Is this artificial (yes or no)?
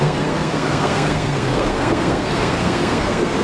yes